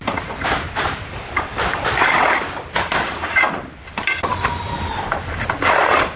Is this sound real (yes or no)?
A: yes